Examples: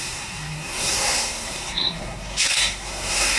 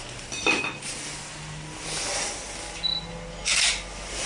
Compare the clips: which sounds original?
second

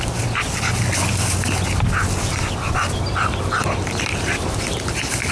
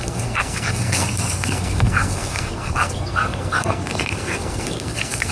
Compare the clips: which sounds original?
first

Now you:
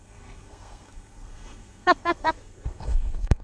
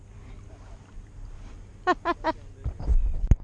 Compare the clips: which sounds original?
second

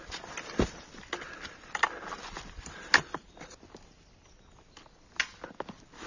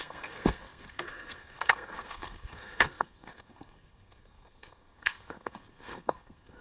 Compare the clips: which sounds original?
first